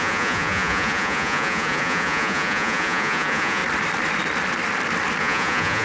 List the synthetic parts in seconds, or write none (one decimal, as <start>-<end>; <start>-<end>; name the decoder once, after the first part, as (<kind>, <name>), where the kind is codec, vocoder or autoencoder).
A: 0.0-3.6 (vocoder, Vocos); 5.2-5.8